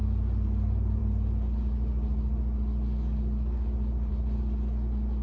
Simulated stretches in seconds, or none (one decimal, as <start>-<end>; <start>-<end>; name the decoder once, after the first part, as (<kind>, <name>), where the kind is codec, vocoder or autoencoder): none